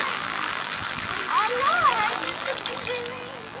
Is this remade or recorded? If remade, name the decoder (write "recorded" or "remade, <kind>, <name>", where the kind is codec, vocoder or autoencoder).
remade, vocoder, BigVGAN v2